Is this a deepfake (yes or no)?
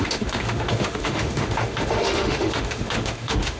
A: yes